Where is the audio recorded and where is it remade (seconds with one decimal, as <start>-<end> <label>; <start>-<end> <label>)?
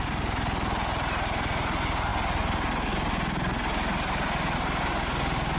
0.0-5.6 recorded